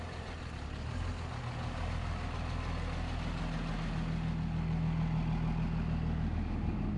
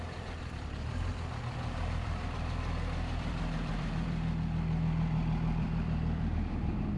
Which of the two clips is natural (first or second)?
first